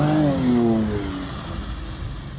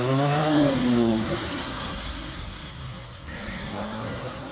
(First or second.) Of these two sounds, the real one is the first